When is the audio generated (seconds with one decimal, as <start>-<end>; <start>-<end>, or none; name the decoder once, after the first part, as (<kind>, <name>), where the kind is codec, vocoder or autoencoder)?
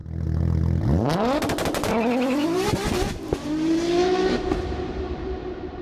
3.5-5.8 (vocoder, BigVGAN v2)